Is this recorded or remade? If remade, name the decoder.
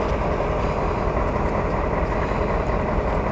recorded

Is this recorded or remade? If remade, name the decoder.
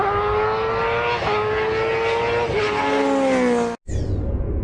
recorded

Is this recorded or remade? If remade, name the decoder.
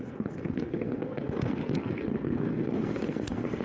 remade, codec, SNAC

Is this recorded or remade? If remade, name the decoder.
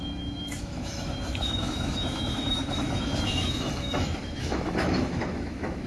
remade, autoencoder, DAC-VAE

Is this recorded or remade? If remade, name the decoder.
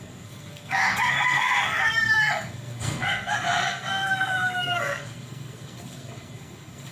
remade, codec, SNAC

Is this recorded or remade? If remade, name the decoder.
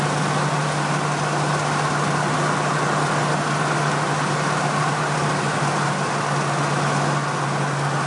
recorded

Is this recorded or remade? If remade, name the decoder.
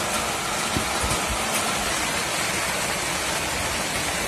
recorded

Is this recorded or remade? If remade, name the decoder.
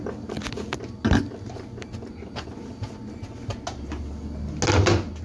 recorded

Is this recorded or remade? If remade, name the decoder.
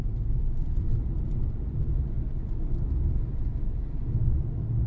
recorded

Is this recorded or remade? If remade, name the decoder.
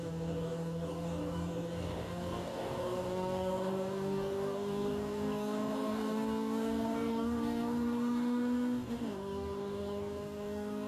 remade, codec, DAC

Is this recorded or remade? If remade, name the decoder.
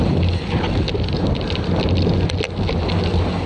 recorded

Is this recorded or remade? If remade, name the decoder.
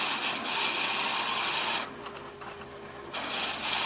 recorded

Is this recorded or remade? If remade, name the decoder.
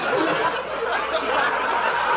recorded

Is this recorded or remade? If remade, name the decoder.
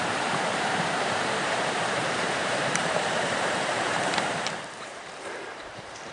remade, vocoder, BigVGAN v2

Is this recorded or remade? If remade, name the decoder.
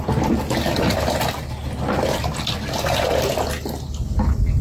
recorded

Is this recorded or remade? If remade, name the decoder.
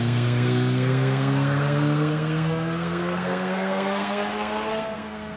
remade, codec, SNAC